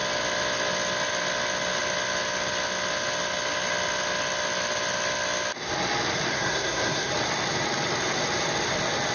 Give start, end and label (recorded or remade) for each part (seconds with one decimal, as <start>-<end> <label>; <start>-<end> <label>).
0.0-6.3 recorded; 6.3-7.1 remade; 7.1-9.1 recorded